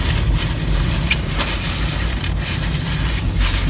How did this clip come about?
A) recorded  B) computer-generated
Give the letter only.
B